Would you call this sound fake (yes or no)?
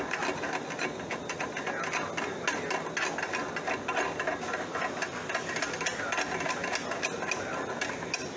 no